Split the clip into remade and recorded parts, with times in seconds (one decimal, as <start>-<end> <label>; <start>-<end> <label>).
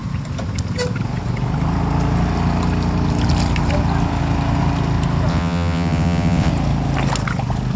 0.0-5.3 recorded; 5.3-6.5 remade; 6.5-7.8 recorded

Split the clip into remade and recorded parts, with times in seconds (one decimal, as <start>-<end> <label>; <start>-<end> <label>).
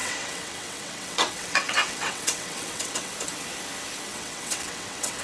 0.0-3.1 remade; 3.1-4.1 recorded; 4.1-5.2 remade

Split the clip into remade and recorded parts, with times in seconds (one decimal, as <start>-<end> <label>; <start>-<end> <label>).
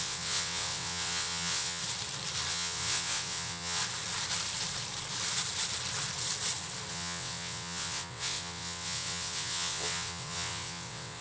0.0-1.8 remade; 1.8-2.5 recorded; 2.5-3.8 remade; 3.8-6.9 recorded; 6.9-11.2 remade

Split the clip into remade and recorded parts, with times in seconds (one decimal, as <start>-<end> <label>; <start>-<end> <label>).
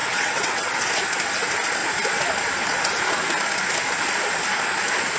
0.0-0.7 remade; 0.7-5.2 recorded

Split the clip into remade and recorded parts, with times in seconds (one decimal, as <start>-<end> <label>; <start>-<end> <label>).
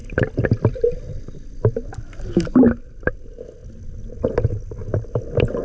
0.0-5.6 recorded